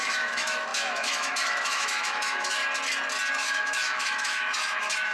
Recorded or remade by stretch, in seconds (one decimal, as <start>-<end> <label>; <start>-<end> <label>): 0.0-2.6 remade; 2.6-3.3 recorded; 3.3-5.1 remade